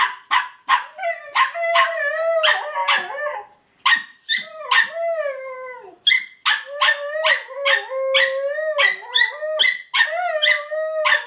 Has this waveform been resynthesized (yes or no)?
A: no